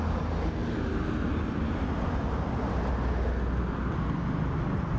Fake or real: real